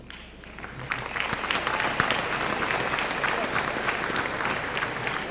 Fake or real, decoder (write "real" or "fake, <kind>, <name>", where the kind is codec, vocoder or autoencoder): real